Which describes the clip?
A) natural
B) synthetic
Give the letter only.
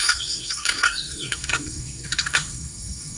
B